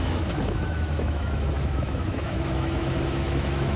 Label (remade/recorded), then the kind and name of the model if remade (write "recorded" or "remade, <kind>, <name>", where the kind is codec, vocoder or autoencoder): remade, autoencoder, DAC-VAE